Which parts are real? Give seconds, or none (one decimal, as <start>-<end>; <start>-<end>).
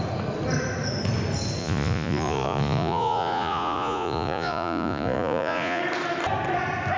0.0-1.6; 5.8-7.0